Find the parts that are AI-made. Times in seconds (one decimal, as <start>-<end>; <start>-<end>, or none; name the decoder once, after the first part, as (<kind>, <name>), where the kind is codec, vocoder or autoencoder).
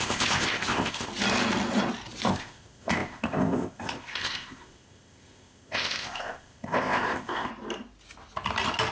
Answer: 0.0-1.1 (codec, ZipCodec); 2.3-7.5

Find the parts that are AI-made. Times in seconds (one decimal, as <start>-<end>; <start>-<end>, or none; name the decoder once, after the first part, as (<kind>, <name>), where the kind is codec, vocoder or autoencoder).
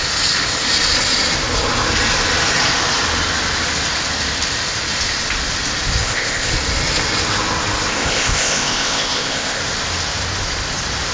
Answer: 6.0-6.5 (codec, ZipCodec); 7.9-9.6